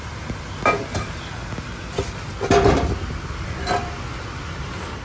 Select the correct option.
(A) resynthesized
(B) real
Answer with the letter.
B